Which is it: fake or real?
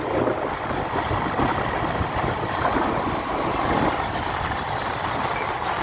real